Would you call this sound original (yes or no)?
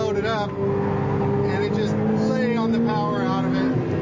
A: yes